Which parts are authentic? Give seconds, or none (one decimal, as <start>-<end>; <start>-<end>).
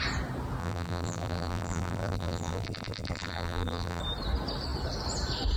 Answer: 0.0-0.6; 4.0-5.6